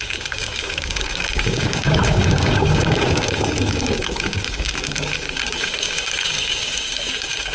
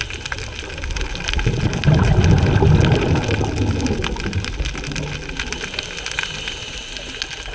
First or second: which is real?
second